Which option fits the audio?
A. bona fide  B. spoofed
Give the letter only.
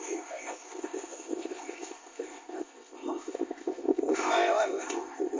B